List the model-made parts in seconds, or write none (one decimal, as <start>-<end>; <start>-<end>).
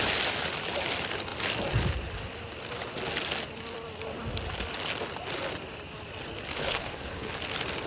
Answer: 6.6-7.3